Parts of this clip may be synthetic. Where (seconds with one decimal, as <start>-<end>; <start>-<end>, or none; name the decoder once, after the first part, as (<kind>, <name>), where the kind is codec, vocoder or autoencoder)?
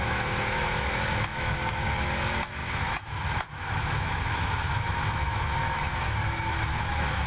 0.0-7.3 (autoencoder, DAC-VAE)